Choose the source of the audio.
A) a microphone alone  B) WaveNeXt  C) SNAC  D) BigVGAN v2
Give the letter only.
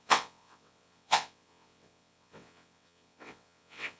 B